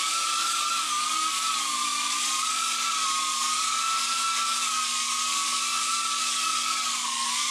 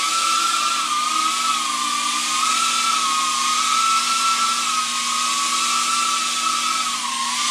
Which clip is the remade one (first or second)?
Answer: first